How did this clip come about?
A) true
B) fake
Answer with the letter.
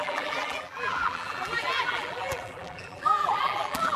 B